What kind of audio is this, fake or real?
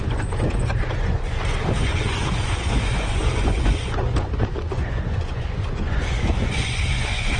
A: fake